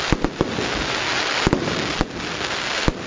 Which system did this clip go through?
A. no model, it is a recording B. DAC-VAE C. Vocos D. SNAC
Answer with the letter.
A